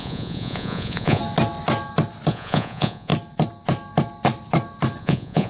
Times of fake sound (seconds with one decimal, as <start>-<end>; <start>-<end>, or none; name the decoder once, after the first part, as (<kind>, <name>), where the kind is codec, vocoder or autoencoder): 0.0-1.2 (vocoder, Vocos); 2.3-3.1; 5.0-5.5

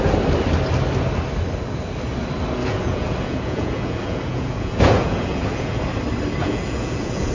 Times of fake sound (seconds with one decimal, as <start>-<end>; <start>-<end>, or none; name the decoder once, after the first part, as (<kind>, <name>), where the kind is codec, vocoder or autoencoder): 2.6-5.8 (vocoder, Vocos); 6.4-7.3